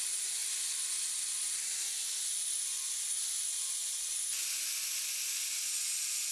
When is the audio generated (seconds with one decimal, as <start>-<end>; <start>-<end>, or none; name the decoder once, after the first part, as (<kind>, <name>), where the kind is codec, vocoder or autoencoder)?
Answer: none

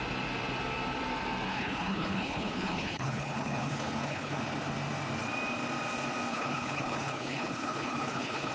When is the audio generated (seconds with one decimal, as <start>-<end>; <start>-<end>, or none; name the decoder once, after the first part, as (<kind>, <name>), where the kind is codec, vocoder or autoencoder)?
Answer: 1.5-4.4 (codec, HILCodec); 6.3-8.5

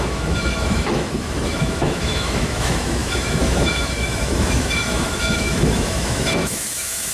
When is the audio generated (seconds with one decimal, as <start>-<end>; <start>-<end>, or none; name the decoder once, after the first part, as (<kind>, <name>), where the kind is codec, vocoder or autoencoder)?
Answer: 0.0-7.1 (autoencoder, DAC-VAE)

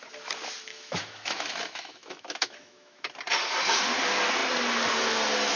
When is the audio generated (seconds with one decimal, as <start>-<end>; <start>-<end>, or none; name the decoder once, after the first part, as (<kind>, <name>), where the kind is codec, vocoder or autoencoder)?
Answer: 0.7-3.1 (autoencoder, DAC-VAE)